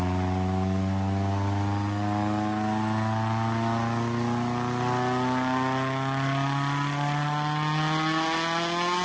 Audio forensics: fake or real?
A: real